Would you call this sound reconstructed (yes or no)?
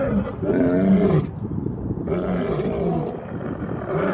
no